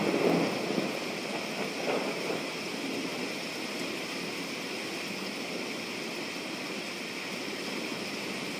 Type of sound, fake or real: real